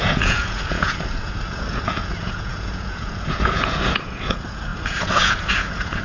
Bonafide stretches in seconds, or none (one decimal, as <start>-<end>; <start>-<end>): none